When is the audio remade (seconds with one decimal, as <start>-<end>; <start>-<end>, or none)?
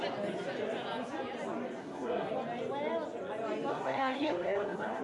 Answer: 1.8-2.3; 3.7-5.0